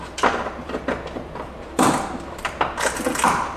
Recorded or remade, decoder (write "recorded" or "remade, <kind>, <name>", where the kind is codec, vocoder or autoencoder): remade, vocoder, BigVGAN v2